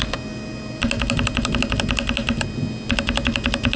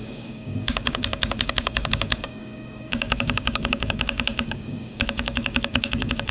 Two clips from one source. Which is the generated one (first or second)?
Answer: second